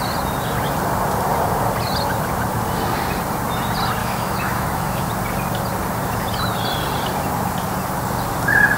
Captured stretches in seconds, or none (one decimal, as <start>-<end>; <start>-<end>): 0.0-4.0; 5.1-8.8